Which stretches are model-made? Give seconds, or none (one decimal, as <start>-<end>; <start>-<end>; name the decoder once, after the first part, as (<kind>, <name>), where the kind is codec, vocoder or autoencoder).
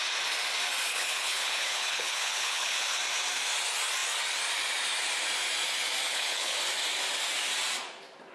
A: 0.9-3.0 (codec, HILCodec); 6.1-6.6